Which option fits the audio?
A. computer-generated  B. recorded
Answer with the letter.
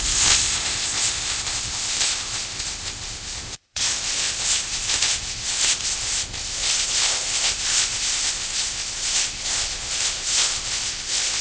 A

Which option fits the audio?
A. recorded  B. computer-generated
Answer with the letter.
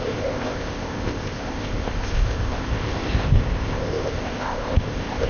B